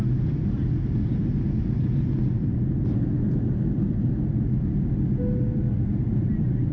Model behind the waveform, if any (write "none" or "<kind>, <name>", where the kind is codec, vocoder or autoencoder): none